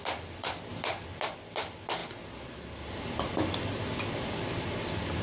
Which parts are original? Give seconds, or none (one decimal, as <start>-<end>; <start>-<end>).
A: 2.0-5.2